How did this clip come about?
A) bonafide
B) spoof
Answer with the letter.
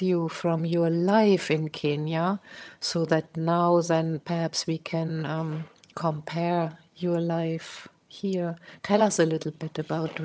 B